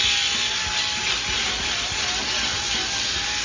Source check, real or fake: real